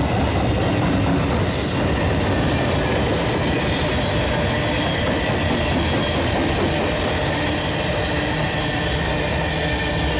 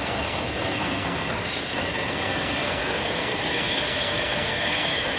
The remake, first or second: second